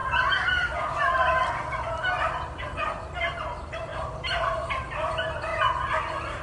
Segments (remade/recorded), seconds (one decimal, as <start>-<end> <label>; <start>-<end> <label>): 0.0-3.2 recorded; 3.2-5.5 remade; 5.5-6.0 recorded; 6.0-6.4 remade